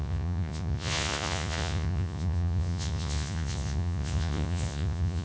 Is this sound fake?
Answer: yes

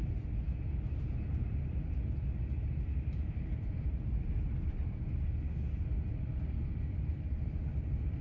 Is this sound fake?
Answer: no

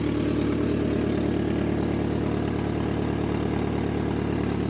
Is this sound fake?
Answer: no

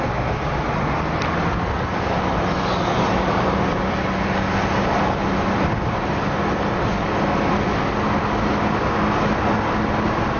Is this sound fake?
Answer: no